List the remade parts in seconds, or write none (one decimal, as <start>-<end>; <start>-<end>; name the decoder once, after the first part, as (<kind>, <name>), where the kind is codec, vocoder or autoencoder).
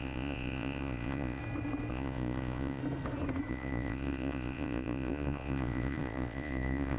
0.0-1.4 (vocoder, Vocos); 1.9-2.8; 3.5-7.0